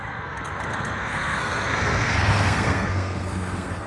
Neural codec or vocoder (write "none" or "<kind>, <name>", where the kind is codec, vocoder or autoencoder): codec, SNAC